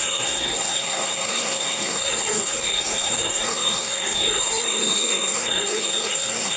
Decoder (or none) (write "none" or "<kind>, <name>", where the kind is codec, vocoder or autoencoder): codec, SNAC